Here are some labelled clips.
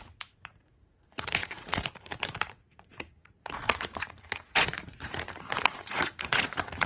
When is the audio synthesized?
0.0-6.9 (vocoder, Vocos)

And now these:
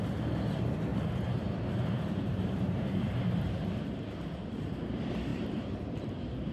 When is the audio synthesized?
0.9-3.9 (vocoder, BigVGAN v2); 5.3-5.8

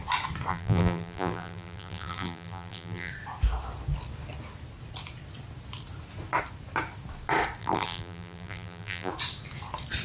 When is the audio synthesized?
0.5-3.1 (vocoder, BigVGAN v2); 7.6-9.1

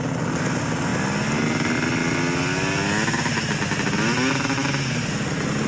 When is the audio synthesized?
none

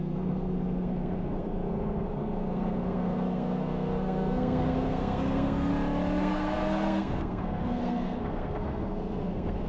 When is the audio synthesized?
0.0-5.7 (codec, SNAC); 6.2-9.7